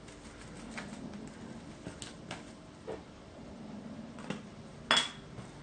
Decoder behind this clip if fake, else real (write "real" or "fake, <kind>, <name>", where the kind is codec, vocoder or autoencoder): real